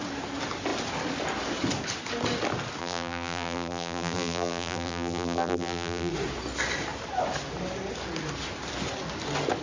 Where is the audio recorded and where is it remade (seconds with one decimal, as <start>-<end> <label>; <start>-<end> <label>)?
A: 0.0-2.8 recorded; 2.8-6.1 remade; 6.1-9.6 recorded